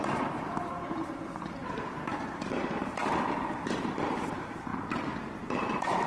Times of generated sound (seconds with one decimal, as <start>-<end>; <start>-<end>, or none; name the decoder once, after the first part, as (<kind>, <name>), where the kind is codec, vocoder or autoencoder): 0.0-4.7 (vocoder, BigVGAN v2); 5.5-6.1